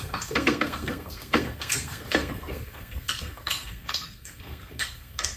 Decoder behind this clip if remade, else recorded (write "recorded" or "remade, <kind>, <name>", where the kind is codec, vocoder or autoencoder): remade, codec, SNAC